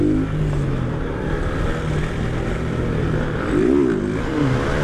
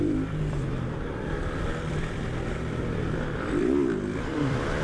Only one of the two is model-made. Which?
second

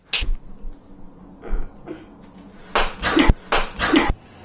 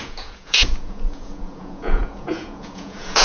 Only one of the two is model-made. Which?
second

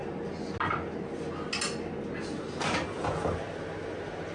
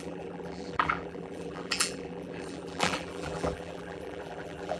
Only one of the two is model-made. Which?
second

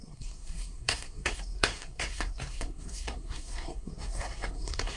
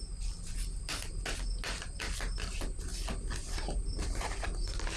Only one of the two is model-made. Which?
first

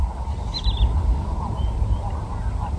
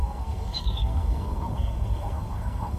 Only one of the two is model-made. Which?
second